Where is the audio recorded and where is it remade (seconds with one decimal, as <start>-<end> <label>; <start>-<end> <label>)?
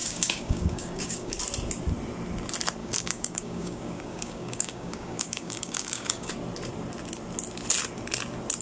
0.0-1.4 remade; 1.4-2.8 recorded; 2.8-6.3 remade; 6.3-8.6 recorded